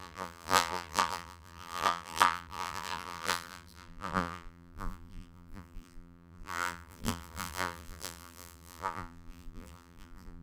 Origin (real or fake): fake